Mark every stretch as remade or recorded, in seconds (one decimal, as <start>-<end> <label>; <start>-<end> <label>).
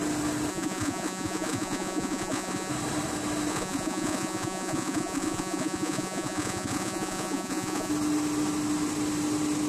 0.0-0.5 recorded; 0.5-2.7 remade; 2.7-3.5 recorded; 3.5-7.9 remade; 7.9-9.7 recorded